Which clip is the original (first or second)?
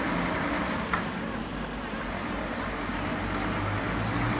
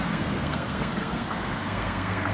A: first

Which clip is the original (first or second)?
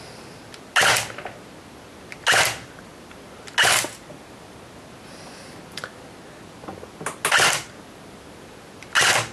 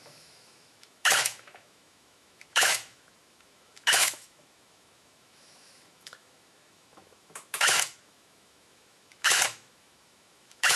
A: first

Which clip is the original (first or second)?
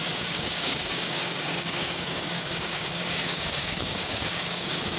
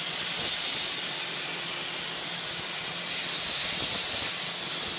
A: second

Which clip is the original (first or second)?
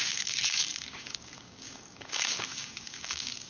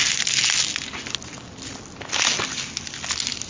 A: second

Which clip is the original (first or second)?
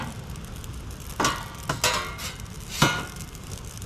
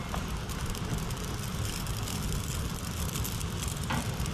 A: first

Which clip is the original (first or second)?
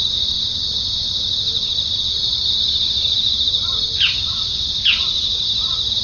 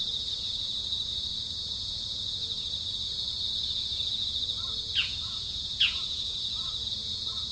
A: first